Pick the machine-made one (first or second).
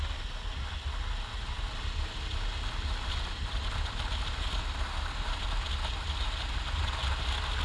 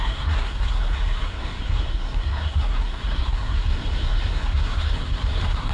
second